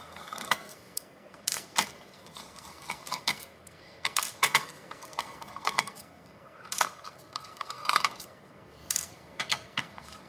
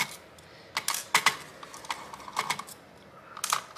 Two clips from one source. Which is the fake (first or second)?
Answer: first